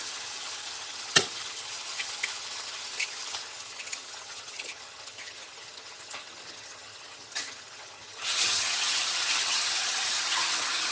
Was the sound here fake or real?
fake